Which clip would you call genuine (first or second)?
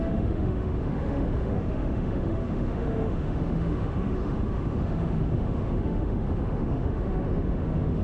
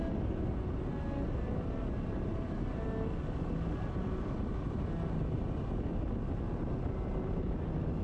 second